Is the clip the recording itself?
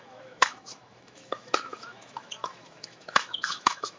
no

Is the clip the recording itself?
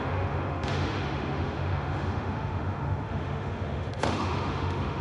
no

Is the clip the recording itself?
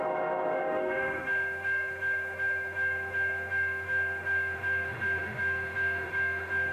no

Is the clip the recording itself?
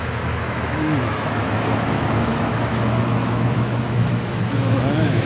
no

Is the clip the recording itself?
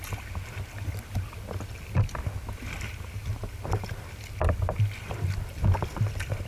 yes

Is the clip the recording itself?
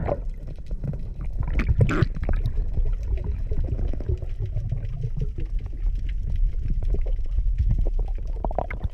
yes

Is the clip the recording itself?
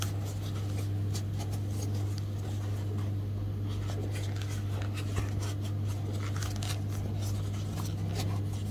yes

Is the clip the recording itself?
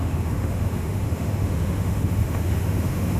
no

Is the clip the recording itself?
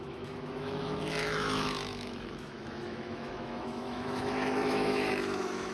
no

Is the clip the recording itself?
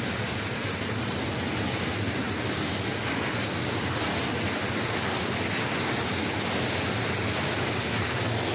yes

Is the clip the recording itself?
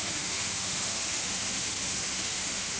no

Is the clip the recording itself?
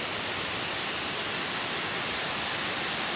yes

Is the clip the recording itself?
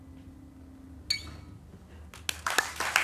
yes